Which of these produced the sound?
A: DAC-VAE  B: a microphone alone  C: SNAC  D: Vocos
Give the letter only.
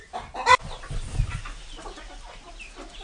B